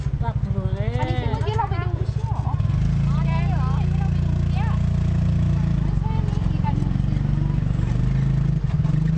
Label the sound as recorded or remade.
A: recorded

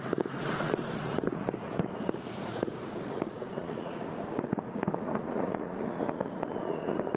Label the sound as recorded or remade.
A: remade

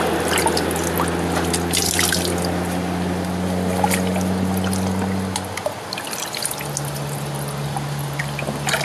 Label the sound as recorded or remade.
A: recorded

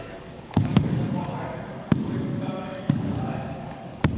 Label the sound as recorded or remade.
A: remade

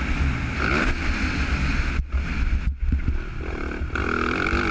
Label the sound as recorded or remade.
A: recorded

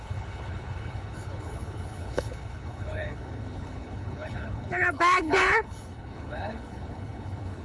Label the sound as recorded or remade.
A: remade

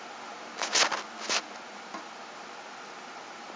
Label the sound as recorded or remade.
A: recorded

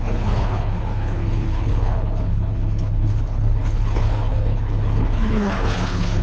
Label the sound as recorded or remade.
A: remade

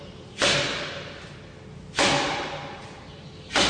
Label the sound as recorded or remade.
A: recorded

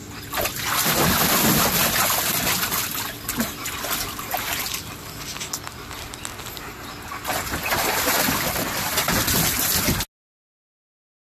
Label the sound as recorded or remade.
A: recorded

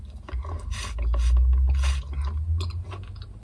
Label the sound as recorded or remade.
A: recorded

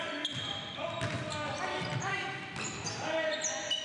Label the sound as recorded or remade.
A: recorded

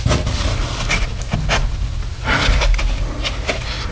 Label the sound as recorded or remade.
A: recorded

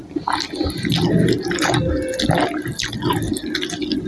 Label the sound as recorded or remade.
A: recorded